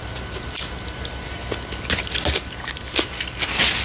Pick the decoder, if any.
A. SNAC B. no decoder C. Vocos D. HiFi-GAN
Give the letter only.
B